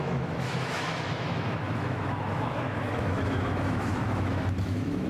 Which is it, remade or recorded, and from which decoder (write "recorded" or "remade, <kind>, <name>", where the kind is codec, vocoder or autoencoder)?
remade, autoencoder, DAC-VAE